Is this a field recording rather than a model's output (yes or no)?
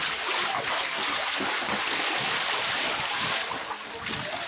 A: yes